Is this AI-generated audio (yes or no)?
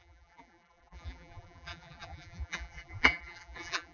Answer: yes